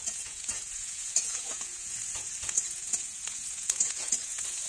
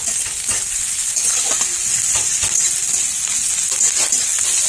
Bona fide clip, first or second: second